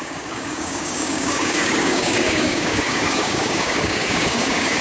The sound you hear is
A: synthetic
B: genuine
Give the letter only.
A